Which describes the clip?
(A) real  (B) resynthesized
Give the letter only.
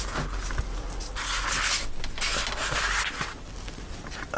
A